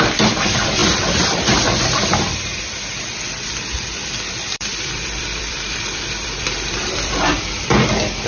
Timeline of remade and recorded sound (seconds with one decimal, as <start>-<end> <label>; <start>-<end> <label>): 0.0-8.3 remade